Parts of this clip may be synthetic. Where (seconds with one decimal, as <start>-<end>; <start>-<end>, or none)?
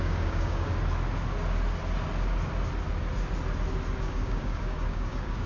0.0-0.7; 4.0-5.5